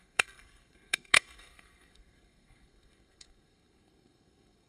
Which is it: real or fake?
fake